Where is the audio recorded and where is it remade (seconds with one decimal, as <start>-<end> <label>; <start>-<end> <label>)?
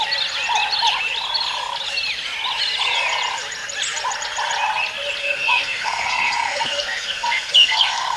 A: 0.0-5.2 recorded; 5.2-8.2 remade